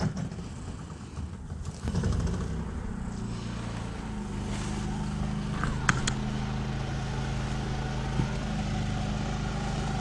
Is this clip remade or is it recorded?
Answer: recorded